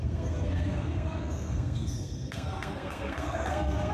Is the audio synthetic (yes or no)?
yes